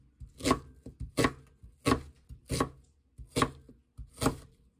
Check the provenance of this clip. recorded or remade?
recorded